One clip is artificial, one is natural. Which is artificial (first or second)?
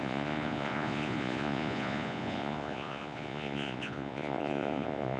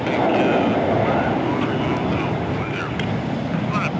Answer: first